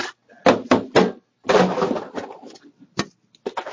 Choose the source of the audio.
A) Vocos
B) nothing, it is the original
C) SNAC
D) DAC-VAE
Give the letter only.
B